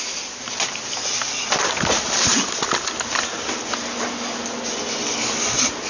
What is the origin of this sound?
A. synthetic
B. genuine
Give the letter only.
B